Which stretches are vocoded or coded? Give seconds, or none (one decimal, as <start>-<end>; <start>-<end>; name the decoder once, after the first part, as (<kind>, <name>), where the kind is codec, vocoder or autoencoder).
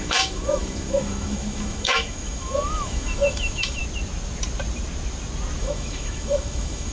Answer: 0.0-3.8 (autoencoder, DAC-VAE); 5.6-6.9